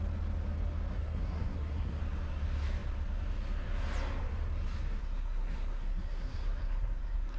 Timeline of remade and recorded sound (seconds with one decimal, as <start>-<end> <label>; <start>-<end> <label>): 0.0-0.9 recorded; 0.9-2.0 remade; 2.0-5.0 recorded; 5.0-7.4 remade